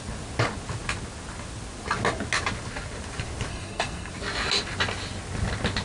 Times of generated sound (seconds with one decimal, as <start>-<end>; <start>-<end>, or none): 3.5-4.1